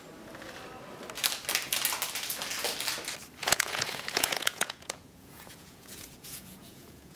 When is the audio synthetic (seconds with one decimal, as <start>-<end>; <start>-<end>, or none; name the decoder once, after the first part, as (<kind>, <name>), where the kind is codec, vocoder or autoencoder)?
3.4-7.2 (vocoder, Vocos)